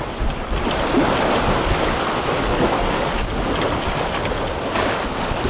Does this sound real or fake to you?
real